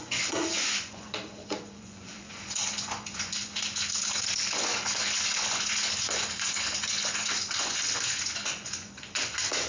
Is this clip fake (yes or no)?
yes